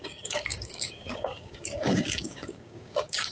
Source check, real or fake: fake